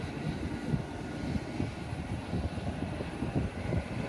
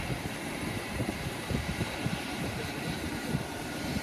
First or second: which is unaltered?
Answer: first